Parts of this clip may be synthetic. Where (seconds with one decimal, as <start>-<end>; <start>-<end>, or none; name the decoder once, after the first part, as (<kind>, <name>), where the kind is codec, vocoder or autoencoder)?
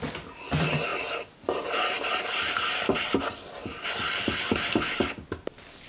none